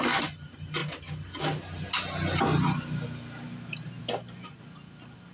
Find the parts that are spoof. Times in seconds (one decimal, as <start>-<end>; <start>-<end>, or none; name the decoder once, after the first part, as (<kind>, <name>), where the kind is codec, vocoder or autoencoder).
none